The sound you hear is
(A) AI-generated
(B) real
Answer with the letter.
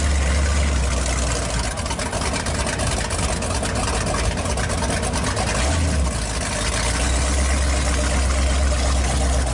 B